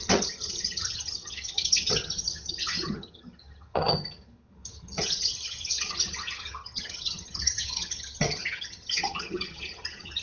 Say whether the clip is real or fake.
fake